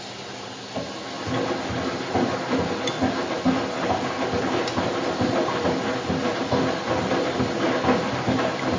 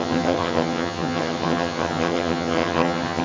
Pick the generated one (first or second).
second